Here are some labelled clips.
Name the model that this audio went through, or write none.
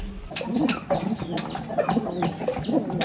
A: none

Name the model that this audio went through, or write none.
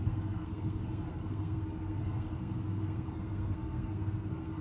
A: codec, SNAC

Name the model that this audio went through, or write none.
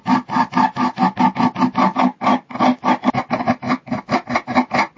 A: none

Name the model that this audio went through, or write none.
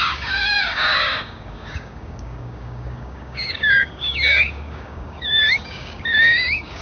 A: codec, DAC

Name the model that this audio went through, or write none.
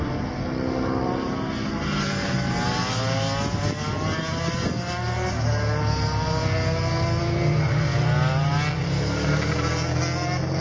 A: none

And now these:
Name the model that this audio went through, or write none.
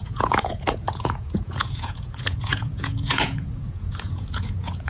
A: vocoder, Vocos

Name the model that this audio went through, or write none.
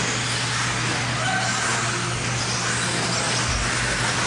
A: none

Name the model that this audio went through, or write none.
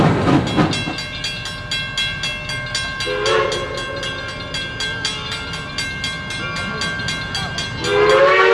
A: none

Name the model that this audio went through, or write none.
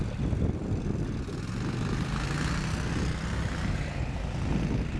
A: none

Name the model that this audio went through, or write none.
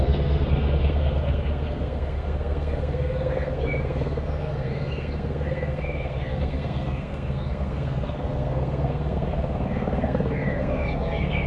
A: codec, SNAC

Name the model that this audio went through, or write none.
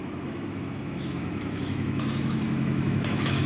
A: autoencoder, DAC-VAE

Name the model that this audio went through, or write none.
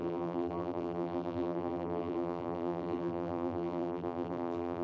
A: vocoder, BigVGAN v2